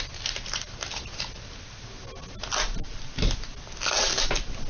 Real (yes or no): yes